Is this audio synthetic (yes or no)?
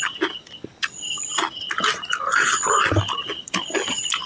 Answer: no